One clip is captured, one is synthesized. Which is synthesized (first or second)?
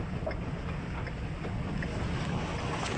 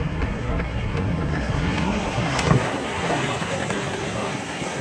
second